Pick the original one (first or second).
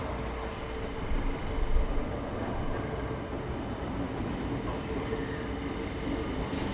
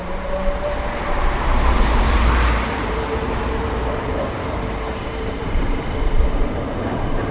first